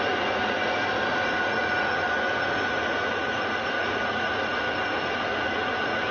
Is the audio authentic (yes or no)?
no